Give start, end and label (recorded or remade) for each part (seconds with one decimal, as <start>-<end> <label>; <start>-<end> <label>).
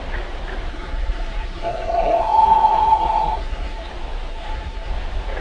0.0-0.7 recorded; 0.7-3.9 remade; 3.9-4.3 recorded; 4.3-4.9 remade; 4.9-5.4 recorded